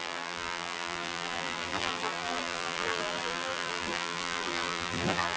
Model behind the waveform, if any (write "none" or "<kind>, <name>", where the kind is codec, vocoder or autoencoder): vocoder, BigVGAN v2